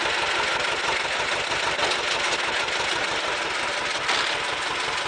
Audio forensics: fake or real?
real